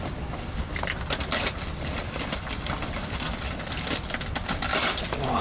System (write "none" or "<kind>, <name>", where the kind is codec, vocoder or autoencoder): none